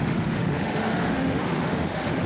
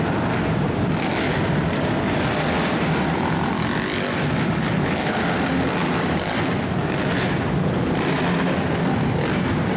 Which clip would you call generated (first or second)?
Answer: first